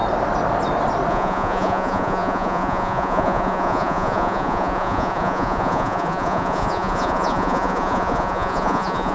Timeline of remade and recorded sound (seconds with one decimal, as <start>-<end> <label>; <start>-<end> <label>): 0.0-1.1 recorded; 1.1-9.1 remade